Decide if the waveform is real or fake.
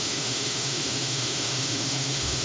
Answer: fake